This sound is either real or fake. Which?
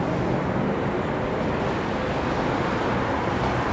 real